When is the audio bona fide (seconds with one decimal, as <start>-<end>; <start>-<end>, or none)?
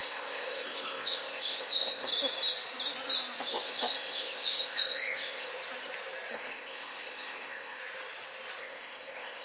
2.1-3.4; 5.5-6.3; 7.8-8.6